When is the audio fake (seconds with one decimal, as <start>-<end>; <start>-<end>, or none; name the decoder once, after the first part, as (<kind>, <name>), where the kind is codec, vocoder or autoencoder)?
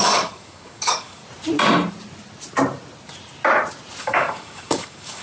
0.0-1.2 (codec, DAC); 4.0-5.2